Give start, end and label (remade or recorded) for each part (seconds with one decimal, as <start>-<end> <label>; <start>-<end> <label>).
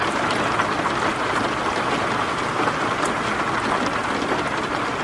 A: 0.0-5.0 recorded